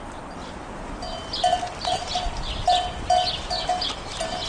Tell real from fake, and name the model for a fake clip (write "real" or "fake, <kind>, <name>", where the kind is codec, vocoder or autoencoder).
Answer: real